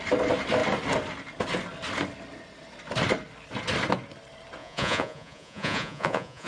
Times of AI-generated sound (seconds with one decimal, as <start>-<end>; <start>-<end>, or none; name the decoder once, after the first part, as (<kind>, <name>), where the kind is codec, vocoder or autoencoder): 4.6-6.5 (vocoder, Vocos)